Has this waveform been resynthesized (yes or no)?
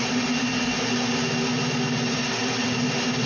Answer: no